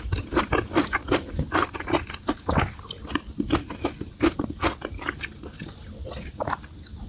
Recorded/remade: recorded